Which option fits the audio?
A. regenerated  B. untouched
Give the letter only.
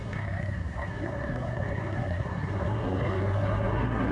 A